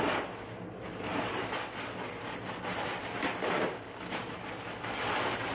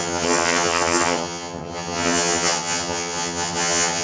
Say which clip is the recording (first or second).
first